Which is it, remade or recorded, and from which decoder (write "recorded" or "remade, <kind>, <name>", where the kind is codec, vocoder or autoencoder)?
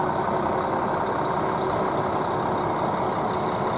recorded